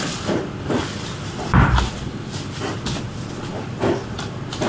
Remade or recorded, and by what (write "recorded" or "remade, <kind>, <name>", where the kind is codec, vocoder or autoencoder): recorded